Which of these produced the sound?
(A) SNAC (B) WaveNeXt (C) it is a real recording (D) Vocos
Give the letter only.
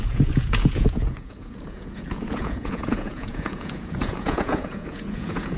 D